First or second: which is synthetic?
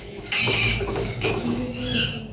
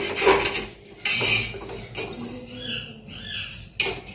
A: first